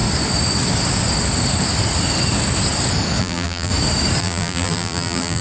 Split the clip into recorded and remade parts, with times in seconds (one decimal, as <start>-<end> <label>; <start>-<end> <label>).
0.0-3.2 recorded; 3.2-3.7 remade; 3.7-4.2 recorded; 4.2-5.4 remade